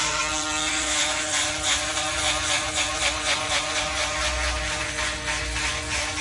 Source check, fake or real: fake